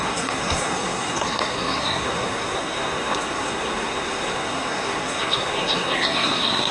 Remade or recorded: remade